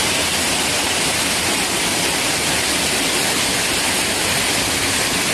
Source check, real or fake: real